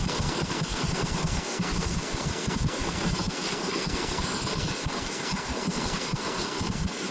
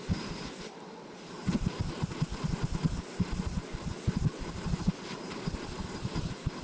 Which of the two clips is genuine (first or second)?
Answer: second